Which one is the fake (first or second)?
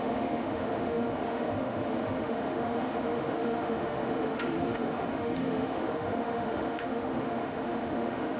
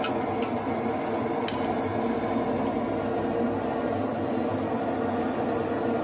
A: first